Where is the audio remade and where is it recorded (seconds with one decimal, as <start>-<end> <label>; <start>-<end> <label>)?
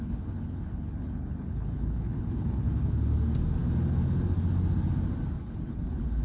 0.0-3.1 remade; 3.1-5.4 recorded; 5.4-6.2 remade